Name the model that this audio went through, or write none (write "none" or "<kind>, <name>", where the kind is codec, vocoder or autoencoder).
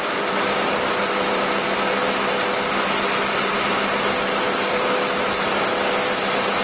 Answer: none